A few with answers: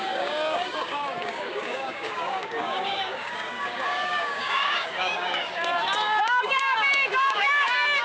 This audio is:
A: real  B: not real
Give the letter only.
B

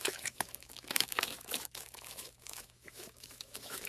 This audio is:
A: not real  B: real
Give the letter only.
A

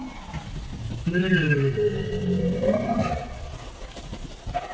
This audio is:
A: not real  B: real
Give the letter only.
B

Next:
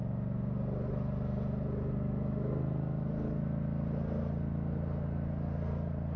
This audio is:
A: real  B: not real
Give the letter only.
A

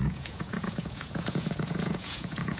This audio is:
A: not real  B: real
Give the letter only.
A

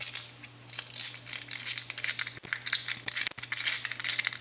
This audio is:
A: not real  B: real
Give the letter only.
B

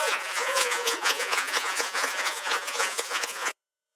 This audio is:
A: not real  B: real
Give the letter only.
A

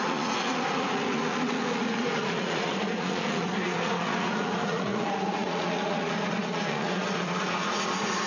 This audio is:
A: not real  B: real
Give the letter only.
A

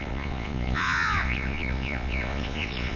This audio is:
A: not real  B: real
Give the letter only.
A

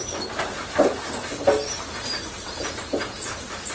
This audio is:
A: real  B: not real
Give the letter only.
A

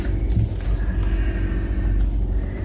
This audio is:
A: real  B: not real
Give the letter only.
A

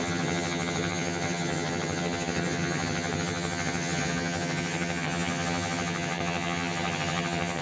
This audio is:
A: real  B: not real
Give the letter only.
B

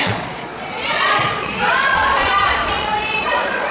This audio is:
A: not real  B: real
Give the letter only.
A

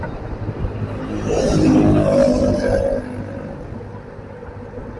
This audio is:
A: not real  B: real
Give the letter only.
B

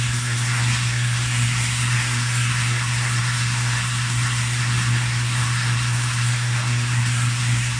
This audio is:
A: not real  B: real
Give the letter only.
A